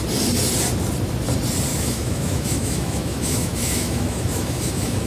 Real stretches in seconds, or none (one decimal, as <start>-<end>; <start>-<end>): 0.0-1.7